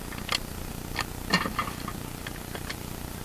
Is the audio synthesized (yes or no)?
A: no